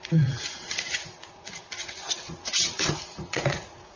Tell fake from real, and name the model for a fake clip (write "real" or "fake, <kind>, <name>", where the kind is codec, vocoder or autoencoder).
fake, vocoder, Vocos